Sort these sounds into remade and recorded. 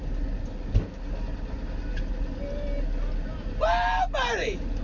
recorded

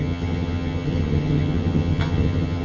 remade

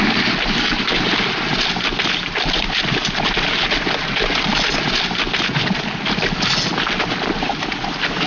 recorded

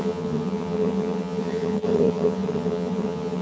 remade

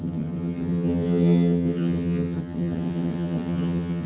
remade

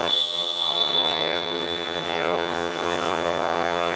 remade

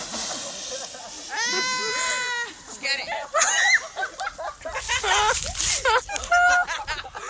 recorded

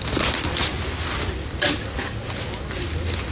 recorded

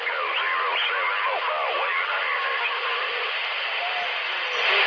recorded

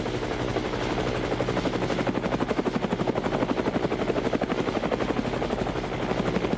recorded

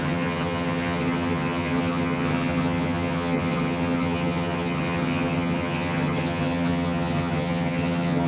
remade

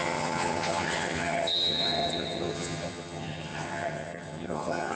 remade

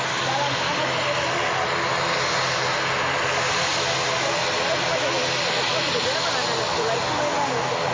recorded